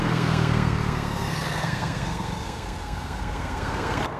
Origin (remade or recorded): remade